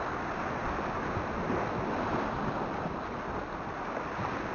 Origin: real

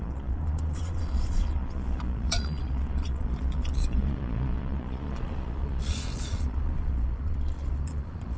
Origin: fake